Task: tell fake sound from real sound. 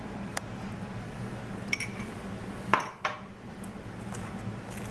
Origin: real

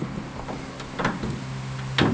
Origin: real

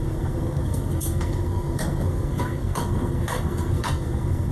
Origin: fake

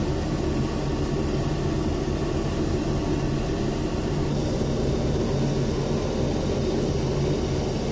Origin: real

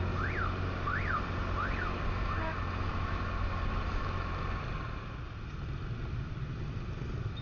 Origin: real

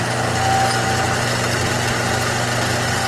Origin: real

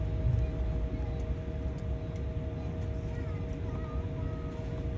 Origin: real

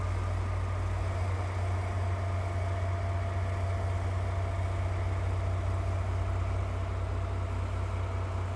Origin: real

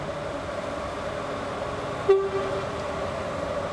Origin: real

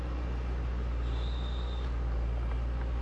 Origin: real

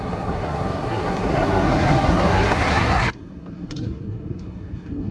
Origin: fake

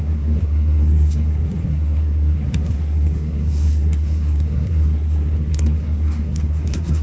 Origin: fake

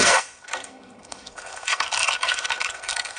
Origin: fake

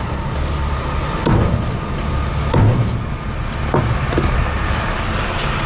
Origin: real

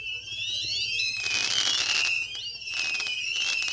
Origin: real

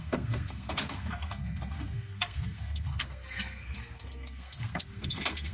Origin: fake